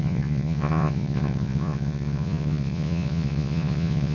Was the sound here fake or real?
fake